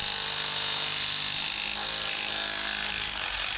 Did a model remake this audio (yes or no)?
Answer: no